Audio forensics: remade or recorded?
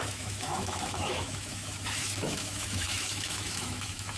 remade